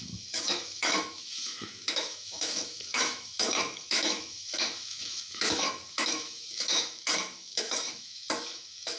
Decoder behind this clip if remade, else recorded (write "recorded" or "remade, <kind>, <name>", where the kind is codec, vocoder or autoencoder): remade, autoencoder, DAC-VAE